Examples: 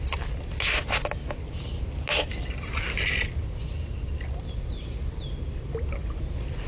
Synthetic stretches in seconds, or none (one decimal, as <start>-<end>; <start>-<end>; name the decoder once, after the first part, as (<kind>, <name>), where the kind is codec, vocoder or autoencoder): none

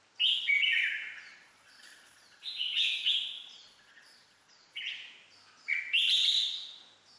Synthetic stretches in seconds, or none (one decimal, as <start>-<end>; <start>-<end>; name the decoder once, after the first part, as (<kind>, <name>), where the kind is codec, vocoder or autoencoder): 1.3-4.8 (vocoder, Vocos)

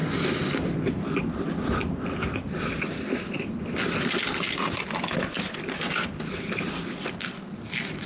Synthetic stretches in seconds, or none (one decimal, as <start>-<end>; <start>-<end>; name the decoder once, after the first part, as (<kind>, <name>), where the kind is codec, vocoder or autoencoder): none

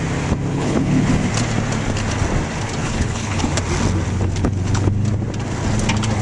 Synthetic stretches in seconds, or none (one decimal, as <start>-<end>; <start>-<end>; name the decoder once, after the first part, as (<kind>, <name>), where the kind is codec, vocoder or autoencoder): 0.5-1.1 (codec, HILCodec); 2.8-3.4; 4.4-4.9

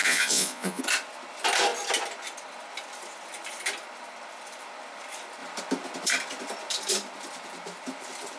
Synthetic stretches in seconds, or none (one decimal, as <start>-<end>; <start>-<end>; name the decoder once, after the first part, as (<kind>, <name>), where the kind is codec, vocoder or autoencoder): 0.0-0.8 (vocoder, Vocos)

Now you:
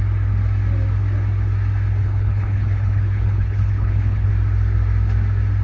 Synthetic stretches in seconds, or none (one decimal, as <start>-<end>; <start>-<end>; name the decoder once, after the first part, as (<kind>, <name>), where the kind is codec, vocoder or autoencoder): 2.0-4.3 (codec, HILCodec)

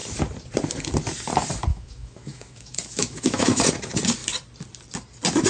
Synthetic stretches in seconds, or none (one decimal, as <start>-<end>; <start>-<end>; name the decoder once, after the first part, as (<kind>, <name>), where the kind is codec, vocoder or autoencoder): 1.7-3.7 (autoencoder, DAC-VAE)

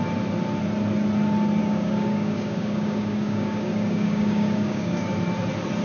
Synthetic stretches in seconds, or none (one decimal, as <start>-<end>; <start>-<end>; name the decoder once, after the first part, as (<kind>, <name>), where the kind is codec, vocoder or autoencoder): 1.6-5.1 (codec, DAC)